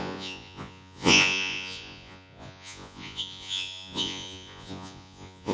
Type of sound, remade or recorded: remade